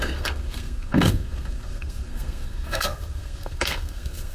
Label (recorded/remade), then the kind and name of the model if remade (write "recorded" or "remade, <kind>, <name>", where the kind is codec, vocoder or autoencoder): remade, codec, SNAC